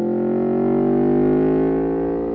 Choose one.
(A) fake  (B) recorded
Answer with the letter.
B